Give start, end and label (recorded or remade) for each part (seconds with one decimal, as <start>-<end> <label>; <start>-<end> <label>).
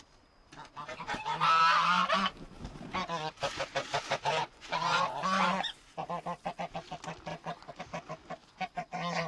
0.0-0.9 recorded; 0.9-1.6 remade; 1.6-3.0 recorded; 3.0-6.5 remade; 6.5-7.3 recorded; 7.3-7.8 remade; 7.8-8.4 recorded; 8.4-9.3 remade